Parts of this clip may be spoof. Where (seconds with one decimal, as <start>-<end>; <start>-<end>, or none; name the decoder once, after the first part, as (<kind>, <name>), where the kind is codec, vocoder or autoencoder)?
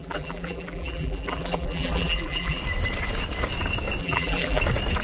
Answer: 0.0-2.6 (vocoder, BigVGAN v2); 4.0-4.6